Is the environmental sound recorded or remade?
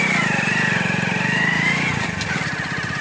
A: recorded